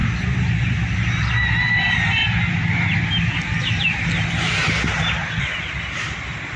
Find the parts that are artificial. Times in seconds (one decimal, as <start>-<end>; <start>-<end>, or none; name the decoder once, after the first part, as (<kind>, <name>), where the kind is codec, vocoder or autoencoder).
0.0-0.7 (vocoder, BigVGAN v2)